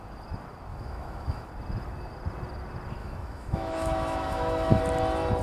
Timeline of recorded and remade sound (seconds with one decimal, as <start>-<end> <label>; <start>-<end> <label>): 0.0-0.7 recorded; 0.7-1.5 remade; 1.5-3.0 recorded; 3.0-4.8 remade; 4.8-5.4 recorded